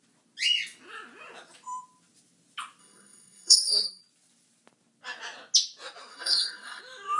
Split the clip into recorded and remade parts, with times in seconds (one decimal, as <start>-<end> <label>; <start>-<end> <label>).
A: 0.0-2.8 recorded; 2.8-4.0 remade; 4.0-6.1 recorded; 6.1-6.8 remade; 6.8-7.2 recorded